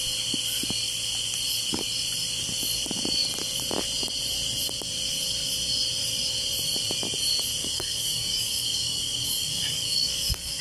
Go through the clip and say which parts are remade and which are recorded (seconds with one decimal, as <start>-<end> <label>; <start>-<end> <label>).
0.0-7.6 recorded; 7.6-10.6 remade